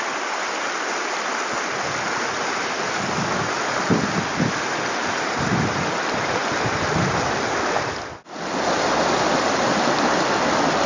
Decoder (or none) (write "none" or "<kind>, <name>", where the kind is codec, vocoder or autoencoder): none